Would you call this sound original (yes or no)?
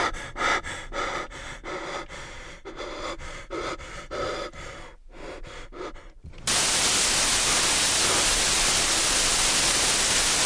yes